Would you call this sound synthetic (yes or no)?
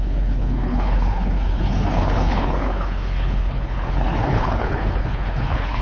yes